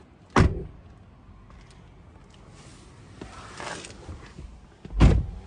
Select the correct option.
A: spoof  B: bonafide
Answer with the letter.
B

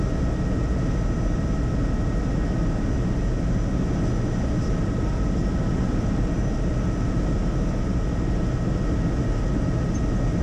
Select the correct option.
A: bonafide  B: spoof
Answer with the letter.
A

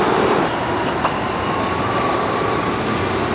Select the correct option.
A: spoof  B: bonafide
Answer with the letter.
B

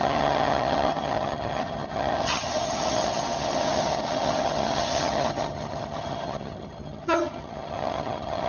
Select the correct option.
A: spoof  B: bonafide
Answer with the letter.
A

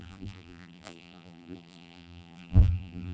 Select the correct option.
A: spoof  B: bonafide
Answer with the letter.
A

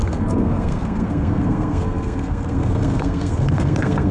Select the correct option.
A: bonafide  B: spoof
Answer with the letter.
B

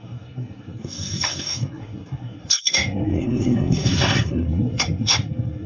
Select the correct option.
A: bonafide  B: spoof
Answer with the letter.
B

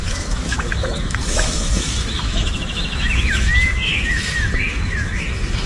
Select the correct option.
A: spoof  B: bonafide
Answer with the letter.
A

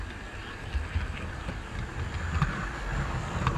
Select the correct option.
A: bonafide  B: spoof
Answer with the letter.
A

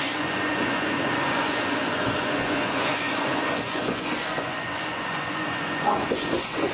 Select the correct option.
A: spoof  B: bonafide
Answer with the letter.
A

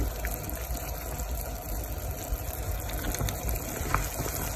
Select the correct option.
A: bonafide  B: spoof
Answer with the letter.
A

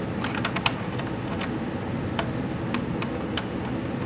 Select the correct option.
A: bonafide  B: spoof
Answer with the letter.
A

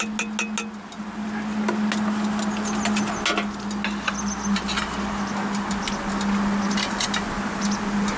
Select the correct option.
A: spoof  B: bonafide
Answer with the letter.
B